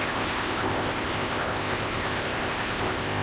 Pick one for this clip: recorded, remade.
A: remade